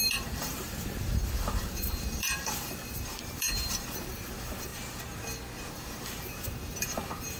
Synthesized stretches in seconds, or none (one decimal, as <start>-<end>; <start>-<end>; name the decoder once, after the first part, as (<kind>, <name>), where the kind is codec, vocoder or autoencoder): 0.0-4.7 (vocoder, BigVGAN v2); 5.7-7.4